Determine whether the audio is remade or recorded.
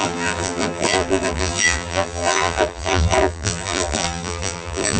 remade